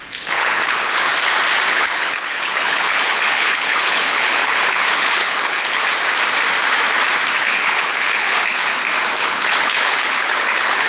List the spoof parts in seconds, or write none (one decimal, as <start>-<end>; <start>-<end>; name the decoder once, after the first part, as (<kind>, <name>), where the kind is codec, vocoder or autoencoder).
0.0-1.1 (codec, HILCodec); 1.7-5.8; 7.4-8.7; 9.2-10.9